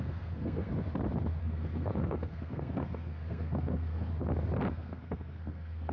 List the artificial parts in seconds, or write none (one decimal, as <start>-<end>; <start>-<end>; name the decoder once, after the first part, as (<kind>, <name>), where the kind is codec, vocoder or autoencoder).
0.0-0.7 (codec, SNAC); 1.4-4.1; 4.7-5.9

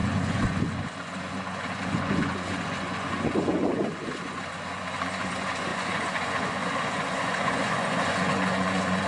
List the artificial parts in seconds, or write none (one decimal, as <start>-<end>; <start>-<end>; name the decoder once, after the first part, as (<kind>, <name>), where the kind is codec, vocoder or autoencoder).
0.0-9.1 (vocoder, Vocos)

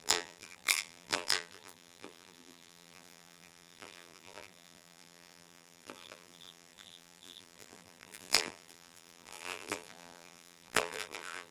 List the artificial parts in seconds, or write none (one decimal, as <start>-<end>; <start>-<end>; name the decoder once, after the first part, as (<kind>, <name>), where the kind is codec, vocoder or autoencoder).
0.0-11.5 (vocoder, BigVGAN v2)

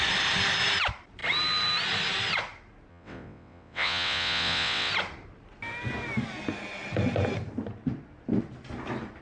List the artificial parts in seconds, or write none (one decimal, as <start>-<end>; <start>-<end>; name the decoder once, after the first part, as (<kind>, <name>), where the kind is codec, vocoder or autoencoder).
2.9-4.9 (vocoder, WaveNeXt)

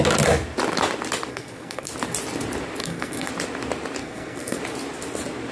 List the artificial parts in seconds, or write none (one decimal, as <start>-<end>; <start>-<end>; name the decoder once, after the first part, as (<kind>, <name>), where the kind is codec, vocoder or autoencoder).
1.3-1.9 (codec, SNAC); 2.8-3.3; 4.0-4.6